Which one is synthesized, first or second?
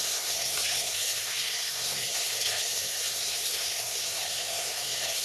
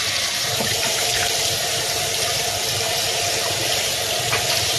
first